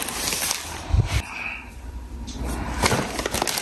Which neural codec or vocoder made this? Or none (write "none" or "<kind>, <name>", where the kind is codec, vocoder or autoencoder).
vocoder, BigVGAN v2